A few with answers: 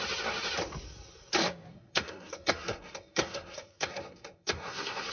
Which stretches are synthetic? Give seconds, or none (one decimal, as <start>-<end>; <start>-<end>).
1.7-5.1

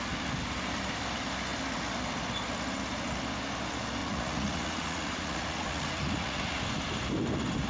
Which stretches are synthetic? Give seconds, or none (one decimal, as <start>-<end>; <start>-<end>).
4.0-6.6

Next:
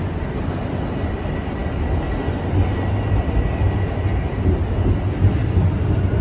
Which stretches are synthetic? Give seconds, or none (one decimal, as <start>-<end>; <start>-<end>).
none